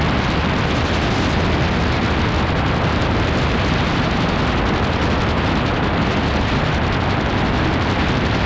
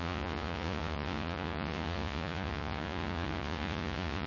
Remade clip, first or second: second